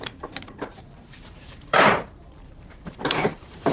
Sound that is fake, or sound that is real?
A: fake